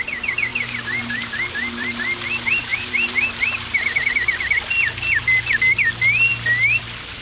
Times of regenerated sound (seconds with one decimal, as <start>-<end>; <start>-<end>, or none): 0.5-2.0; 2.7-4.1